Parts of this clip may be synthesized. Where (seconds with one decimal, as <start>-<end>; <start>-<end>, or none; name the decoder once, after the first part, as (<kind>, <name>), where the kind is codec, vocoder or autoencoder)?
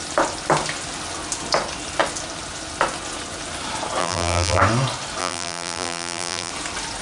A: 4.0-4.6 (vocoder, BigVGAN v2); 5.2-6.5